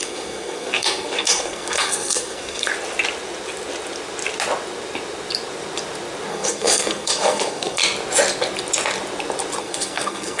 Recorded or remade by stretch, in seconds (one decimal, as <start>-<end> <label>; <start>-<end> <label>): 0.0-2.7 remade; 2.7-6.3 recorded; 6.3-7.8 remade; 7.8-9.6 recorded; 9.6-10.4 remade